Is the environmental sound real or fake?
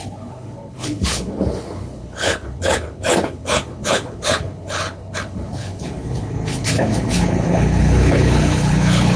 fake